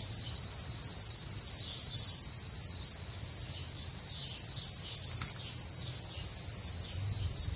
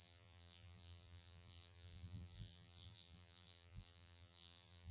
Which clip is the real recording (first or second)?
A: first